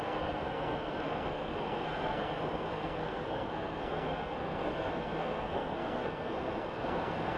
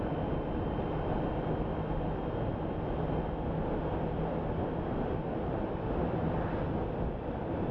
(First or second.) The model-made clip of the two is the first